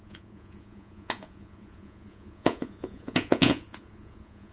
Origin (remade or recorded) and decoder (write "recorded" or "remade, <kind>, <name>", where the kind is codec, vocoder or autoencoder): remade, vocoder, Vocos